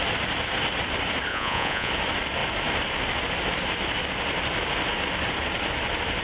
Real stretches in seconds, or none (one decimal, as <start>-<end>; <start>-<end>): 0.0-1.3; 1.9-6.2